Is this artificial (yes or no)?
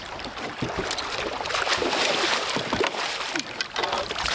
no